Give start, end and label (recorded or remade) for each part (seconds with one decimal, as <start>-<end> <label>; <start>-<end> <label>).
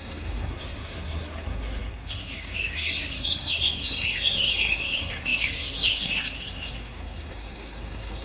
0.0-8.2 remade